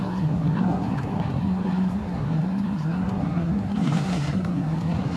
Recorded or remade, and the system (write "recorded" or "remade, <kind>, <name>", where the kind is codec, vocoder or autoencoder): remade, codec, SNAC